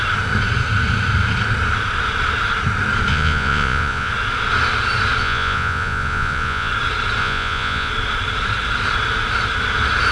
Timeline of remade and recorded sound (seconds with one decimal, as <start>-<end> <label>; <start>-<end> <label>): 0.0-3.1 recorded; 3.1-4.1 remade; 4.1-5.2 recorded; 5.2-6.7 remade; 6.7-7.2 recorded; 7.2-7.9 remade; 7.9-10.1 recorded